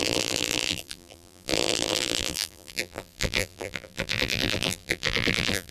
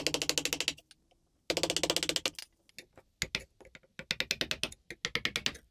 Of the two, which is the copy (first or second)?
first